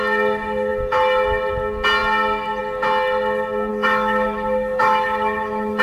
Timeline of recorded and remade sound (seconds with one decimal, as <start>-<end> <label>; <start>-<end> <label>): 0.0-3.7 recorded; 3.7-5.8 remade